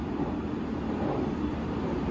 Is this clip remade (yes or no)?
no